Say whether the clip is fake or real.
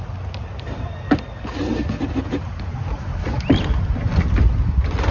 real